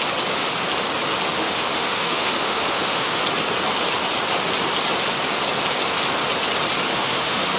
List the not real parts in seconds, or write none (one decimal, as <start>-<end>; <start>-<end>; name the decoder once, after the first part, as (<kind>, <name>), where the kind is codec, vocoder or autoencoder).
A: 1.4-3.2 (autoencoder, DAC-VAE); 6.9-7.6